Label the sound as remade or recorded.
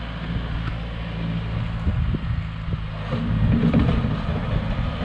recorded